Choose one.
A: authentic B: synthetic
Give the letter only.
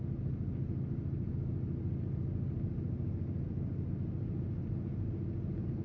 A